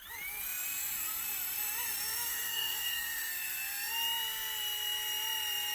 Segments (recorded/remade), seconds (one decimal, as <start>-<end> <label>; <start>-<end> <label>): 0.0-2.3 recorded; 2.3-3.3 remade; 3.3-5.7 recorded

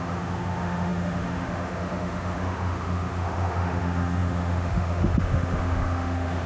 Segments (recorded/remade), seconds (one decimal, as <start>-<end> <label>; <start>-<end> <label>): 0.0-6.5 remade